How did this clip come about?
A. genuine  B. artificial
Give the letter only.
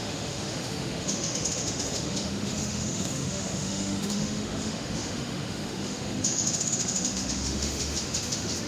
B